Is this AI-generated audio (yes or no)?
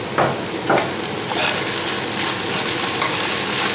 no